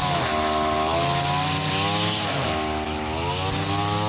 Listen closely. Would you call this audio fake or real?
real